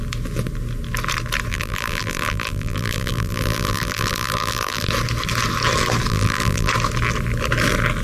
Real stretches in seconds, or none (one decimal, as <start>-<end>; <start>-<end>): 0.0-1.5; 4.9-6.1; 6.7-8.0